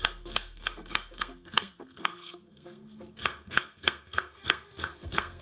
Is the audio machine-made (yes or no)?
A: yes